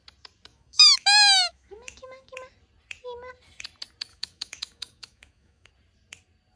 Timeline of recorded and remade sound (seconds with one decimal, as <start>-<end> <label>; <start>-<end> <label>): 0.0-0.5 recorded; 0.5-2.3 remade; 2.3-4.1 recorded; 4.1-5.7 remade; 5.7-6.6 recorded